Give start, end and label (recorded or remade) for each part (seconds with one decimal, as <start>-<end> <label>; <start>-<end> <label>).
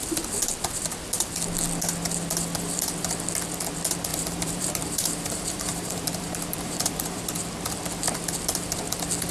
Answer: 0.0-4.1 recorded; 4.1-7.2 remade; 7.2-9.3 recorded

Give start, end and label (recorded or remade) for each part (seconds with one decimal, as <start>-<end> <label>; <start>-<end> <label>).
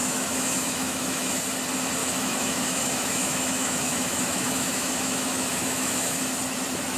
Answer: 0.0-1.4 remade; 1.4-2.0 recorded; 2.0-6.2 remade; 6.2-7.0 recorded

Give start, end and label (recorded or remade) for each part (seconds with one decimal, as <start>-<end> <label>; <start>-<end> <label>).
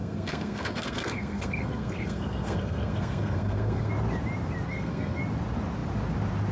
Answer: 0.0-3.9 remade; 3.9-4.7 recorded; 4.7-5.2 remade; 5.2-6.5 recorded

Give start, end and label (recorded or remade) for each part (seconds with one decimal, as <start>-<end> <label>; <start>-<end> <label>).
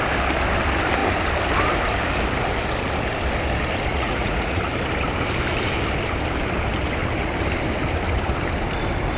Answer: 0.0-3.9 recorded; 3.9-4.6 remade; 4.6-9.2 recorded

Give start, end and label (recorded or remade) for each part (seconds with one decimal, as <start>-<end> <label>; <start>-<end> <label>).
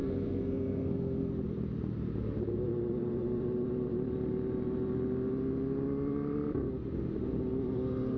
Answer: 0.0-1.3 remade; 1.3-8.2 recorded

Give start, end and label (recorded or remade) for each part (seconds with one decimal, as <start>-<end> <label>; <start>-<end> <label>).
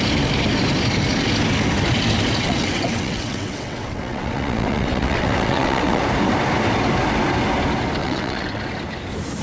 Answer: 0.0-2.4 recorded; 2.4-6.0 remade; 6.0-8.0 recorded; 8.0-8.6 remade; 8.6-9.4 recorded